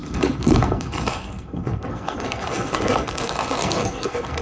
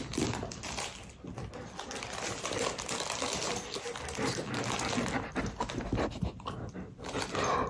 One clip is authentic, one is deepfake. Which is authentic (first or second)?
second